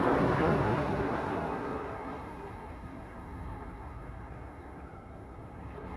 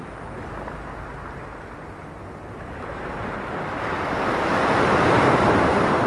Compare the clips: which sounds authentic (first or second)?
second